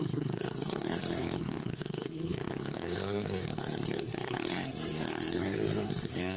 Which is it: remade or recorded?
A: remade